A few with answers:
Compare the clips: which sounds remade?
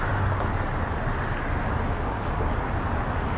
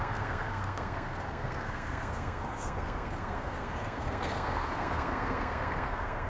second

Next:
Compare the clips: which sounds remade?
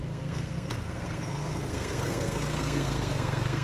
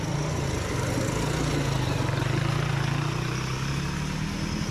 first